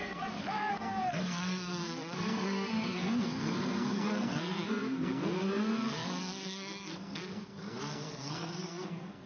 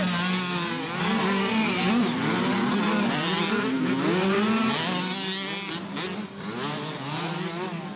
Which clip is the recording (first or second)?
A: second